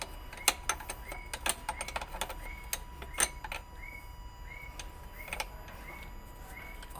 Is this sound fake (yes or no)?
no